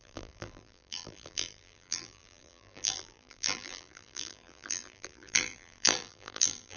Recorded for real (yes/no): no